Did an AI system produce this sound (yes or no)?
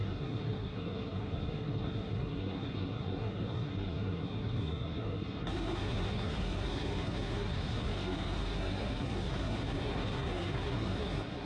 yes